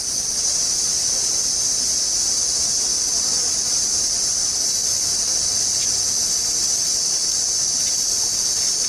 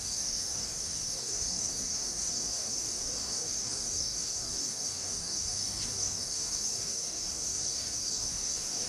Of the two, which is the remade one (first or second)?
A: second